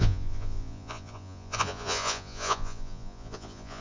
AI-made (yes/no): yes